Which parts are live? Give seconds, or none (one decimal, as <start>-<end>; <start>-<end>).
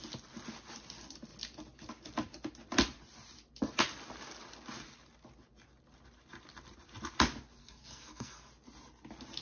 0.0-7.6; 8.5-9.4